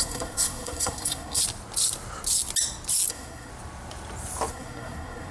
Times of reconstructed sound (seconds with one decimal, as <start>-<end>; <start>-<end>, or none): 0.0-1.4; 3.1-3.5; 4.5-5.3